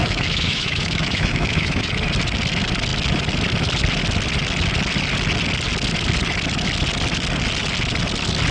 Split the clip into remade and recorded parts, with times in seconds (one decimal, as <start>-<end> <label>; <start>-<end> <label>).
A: 0.0-1.9 remade; 1.9-8.5 recorded